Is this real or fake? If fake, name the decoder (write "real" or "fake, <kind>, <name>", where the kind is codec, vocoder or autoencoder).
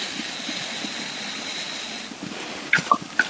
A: real